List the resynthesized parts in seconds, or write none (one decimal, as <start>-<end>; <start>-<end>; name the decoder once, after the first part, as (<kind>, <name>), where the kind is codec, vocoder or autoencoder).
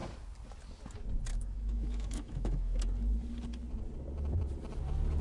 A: 1.3-2.8 (autoencoder, DAC-VAE)